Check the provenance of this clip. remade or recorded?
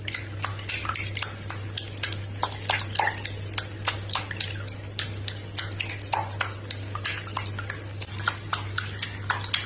recorded